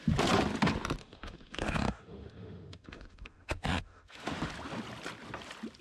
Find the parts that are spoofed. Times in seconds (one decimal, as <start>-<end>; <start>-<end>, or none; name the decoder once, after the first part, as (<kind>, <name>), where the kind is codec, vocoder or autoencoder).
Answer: 1.0-4.5 (autoencoder, DAC-VAE)